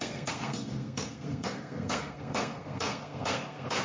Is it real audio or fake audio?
fake